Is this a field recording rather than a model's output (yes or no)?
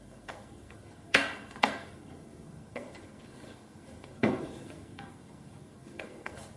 no